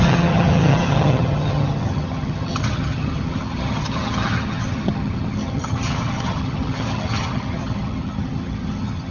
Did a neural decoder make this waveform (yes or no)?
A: yes